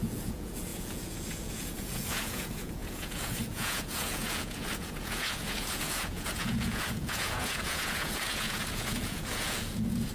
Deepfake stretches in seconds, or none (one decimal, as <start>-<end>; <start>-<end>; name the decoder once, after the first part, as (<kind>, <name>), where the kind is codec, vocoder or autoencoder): 0.0-10.1 (vocoder, Vocos)